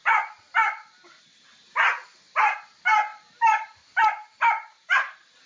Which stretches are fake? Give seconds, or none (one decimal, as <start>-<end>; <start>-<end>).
3.1-4.5